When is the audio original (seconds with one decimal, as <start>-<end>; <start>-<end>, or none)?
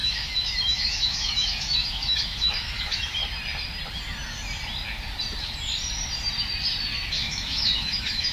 3.2-7.1